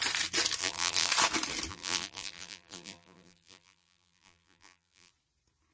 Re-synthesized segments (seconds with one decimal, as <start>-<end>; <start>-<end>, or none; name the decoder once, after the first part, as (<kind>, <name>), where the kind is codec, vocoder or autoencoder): 0.6-1.1 (vocoder, BigVGAN v2); 1.7-5.1